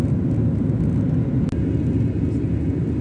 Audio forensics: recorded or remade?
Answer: recorded